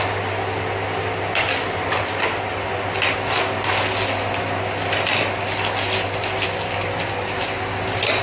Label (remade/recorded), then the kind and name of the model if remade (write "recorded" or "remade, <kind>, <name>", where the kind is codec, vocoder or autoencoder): recorded